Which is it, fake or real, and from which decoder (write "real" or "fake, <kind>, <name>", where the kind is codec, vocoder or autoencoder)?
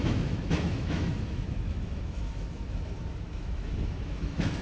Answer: fake, autoencoder, DAC-VAE